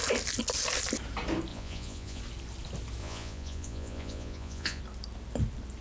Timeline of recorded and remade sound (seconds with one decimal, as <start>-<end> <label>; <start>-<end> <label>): 0.0-1.5 recorded; 1.5-2.2 remade; 2.2-3.0 recorded; 3.0-4.8 remade; 4.8-5.8 recorded